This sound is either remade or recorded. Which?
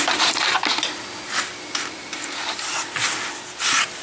recorded